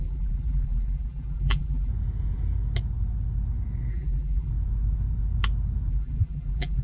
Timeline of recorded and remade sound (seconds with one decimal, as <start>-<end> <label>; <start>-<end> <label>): 0.0-1.9 remade; 1.9-3.9 recorded; 3.9-4.5 remade; 4.5-5.9 recorded; 5.9-6.8 remade